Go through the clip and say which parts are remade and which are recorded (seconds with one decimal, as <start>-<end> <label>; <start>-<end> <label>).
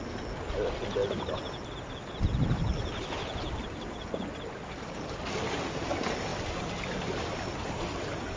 0.0-8.4 recorded